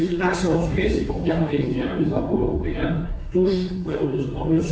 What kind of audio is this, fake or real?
fake